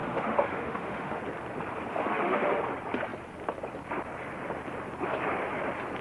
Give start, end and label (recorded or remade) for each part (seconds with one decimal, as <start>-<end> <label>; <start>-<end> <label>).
0.0-1.2 remade; 1.2-1.9 recorded; 1.9-2.6 remade; 2.6-6.0 recorded